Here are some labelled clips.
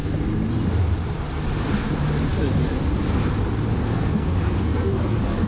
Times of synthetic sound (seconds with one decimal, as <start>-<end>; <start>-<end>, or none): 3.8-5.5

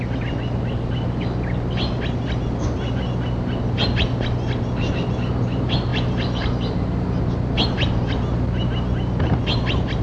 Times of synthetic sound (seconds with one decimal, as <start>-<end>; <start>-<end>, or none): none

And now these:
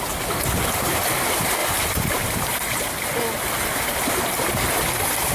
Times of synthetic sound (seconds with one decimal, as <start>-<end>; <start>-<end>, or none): 0.4-1.0; 1.6-3.2

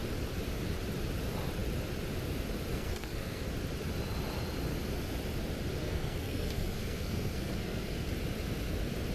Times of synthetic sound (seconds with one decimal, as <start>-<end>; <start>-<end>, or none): 2.7-3.5; 5.8-8.1

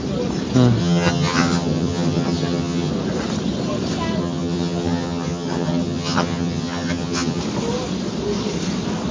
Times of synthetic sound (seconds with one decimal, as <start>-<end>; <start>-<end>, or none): 0.8-2.9; 4.2-7.4